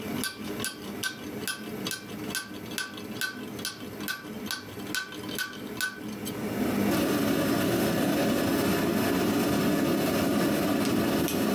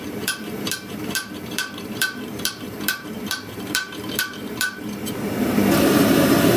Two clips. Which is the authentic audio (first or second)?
first